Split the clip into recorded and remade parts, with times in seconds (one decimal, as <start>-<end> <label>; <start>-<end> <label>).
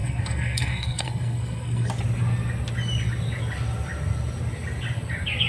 0.0-1.9 remade; 1.9-5.5 recorded